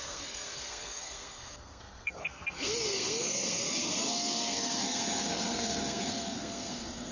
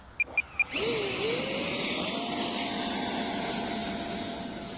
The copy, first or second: first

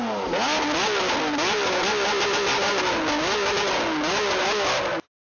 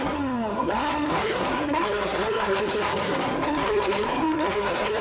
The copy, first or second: second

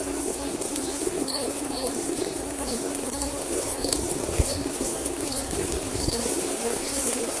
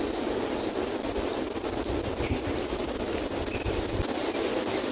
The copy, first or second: first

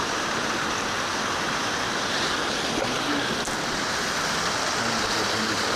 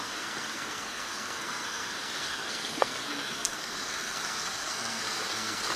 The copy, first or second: second